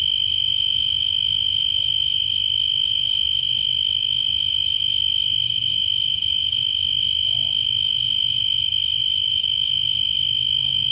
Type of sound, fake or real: real